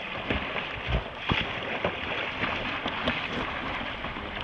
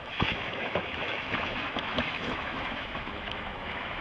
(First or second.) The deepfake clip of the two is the second